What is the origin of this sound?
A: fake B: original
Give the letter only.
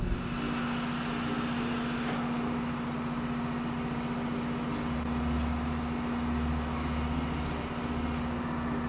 B